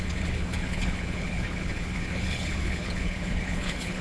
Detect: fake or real fake